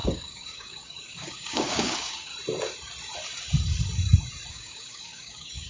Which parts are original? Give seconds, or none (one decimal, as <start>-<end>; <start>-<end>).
2.3-4.5